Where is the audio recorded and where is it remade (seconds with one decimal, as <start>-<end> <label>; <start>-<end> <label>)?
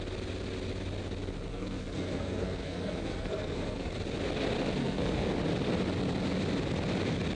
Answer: 0.0-1.5 recorded; 1.5-3.9 remade; 3.9-4.8 recorded; 4.8-5.3 remade; 5.3-7.3 recorded